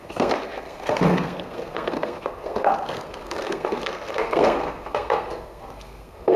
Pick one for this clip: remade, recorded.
remade